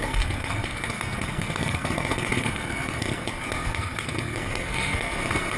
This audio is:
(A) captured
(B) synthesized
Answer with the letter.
B